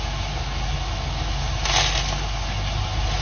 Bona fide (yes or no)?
yes